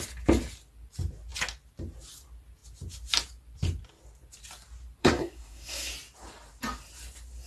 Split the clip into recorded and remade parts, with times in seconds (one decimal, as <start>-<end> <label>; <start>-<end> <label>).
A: 0.0-5.0 recorded; 5.0-5.9 remade; 5.9-7.5 recorded